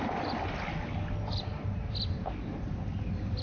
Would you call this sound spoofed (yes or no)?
no